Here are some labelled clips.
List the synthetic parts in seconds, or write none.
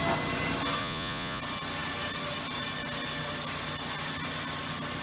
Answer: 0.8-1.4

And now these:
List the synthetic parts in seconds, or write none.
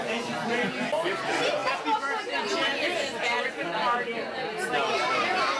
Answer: none